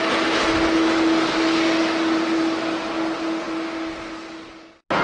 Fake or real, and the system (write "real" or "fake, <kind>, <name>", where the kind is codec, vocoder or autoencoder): real